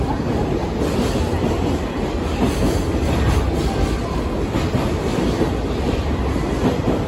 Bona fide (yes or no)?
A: yes